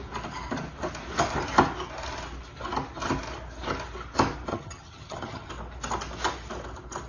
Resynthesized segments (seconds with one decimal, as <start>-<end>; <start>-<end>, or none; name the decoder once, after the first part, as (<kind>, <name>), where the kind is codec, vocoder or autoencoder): 4.5-5.5 (vocoder, HiFi-GAN)